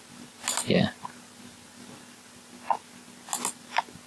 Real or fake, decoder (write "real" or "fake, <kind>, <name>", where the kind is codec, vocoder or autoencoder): real